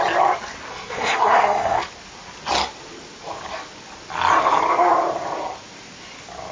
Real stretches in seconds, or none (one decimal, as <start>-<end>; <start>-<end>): 0.0-0.7; 1.8-6.5